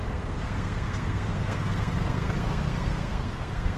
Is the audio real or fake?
fake